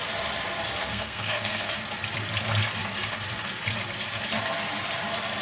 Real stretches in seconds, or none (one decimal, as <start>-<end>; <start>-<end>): 0.0-0.8; 1.7-5.4

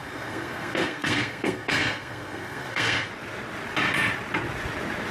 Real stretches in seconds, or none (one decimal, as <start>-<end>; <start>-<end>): 3.1-5.1

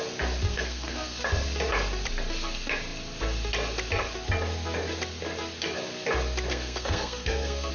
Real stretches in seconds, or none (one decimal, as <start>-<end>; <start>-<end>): 0.0-0.5; 1.2-6.5

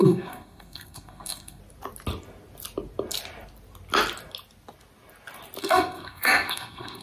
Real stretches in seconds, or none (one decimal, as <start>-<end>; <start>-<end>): 1.6-5.6

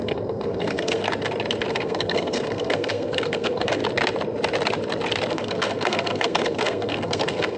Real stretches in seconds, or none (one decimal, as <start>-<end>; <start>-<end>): 1.0-1.7; 3.8-5.3

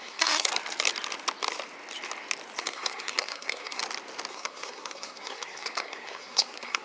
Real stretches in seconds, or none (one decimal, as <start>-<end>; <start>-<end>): 0.5-2.6; 3.8-4.3

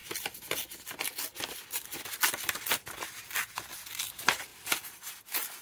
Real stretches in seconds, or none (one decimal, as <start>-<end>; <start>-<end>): 0.0-5.6

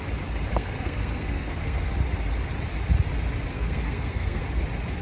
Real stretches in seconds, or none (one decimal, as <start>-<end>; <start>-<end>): 0.0-0.5; 1.9-3.5; 4.4-5.0